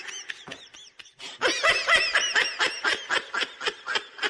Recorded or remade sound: recorded